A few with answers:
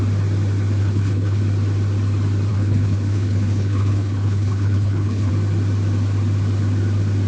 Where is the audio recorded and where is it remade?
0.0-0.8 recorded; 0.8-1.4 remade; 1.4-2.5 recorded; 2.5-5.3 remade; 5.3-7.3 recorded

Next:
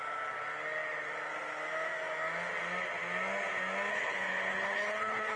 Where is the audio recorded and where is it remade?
0.0-3.9 recorded; 3.9-5.4 remade